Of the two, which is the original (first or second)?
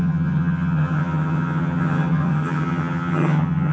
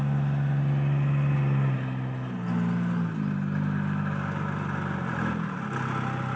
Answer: second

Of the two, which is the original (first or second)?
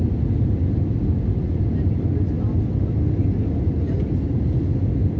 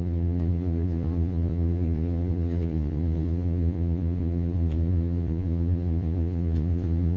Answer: first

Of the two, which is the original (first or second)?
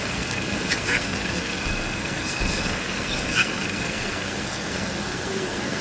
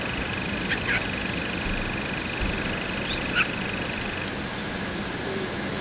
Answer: second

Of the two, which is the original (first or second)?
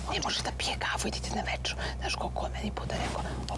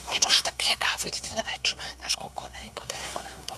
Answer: first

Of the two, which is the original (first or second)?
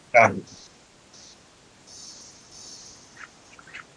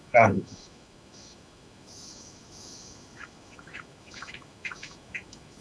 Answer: first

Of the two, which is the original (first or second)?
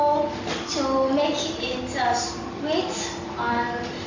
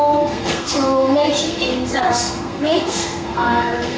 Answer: first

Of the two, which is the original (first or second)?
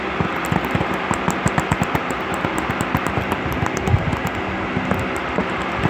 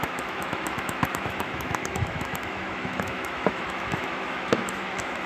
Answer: first